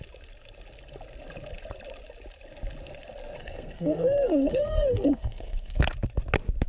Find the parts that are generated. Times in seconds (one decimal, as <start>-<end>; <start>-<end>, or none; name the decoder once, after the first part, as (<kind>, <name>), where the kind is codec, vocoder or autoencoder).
3.4-5.8 (codec, SNAC)